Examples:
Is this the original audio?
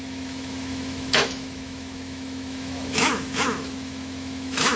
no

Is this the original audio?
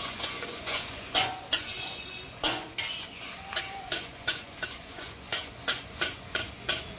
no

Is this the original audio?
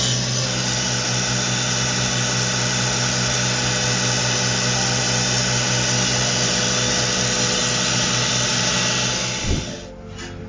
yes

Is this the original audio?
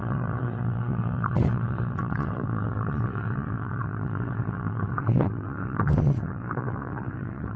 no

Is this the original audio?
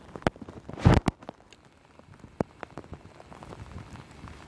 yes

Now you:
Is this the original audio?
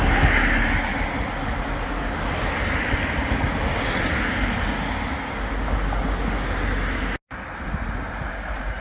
yes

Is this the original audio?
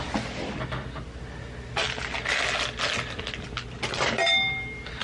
yes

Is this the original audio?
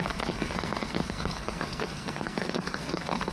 no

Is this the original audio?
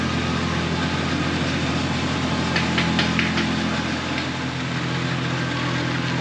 yes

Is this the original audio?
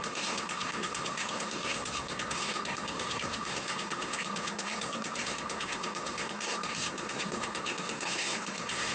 no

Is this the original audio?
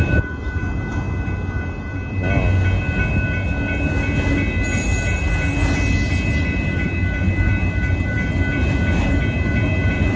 yes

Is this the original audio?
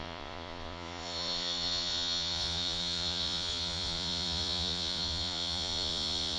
no